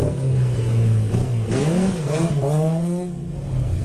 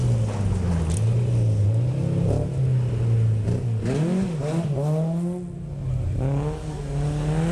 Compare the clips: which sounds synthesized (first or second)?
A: first